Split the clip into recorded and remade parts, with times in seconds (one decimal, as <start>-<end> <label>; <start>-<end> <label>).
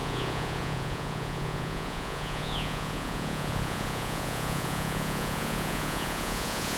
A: 0.0-6.8 remade